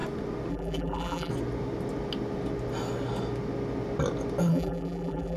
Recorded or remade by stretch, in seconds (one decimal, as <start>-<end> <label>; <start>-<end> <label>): 0.0-0.5 recorded; 0.5-1.3 remade; 1.3-4.5 recorded; 4.5-5.4 remade